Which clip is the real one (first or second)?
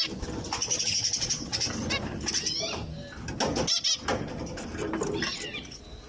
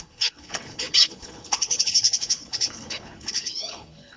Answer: first